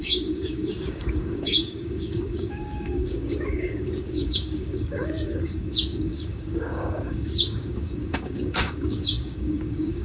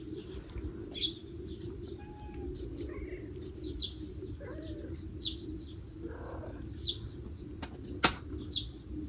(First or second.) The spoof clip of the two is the first